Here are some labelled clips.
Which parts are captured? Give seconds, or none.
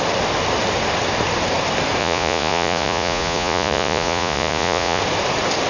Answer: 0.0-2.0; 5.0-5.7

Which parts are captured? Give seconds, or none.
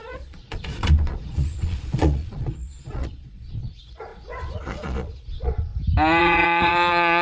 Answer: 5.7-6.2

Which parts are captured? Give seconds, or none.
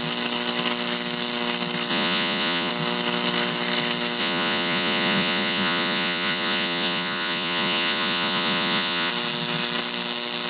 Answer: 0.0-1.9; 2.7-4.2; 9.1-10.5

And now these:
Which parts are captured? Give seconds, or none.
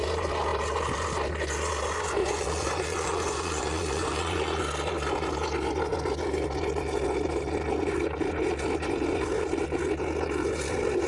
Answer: 0.0-2.2; 4.6-11.1